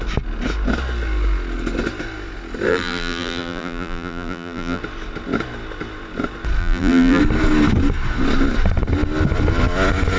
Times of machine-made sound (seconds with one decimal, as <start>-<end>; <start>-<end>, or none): 2.7-4.8; 6.6-7.2